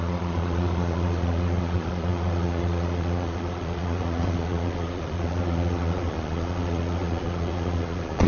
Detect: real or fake fake